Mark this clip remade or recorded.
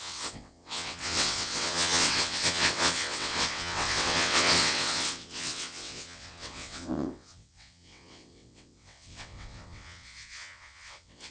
remade